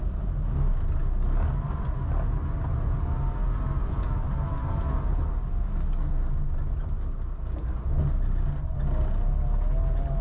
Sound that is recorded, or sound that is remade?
recorded